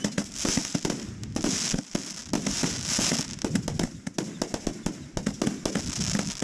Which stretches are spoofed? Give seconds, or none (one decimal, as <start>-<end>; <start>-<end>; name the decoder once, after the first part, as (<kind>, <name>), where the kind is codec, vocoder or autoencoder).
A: none